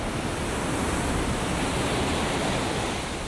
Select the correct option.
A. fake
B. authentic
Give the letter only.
B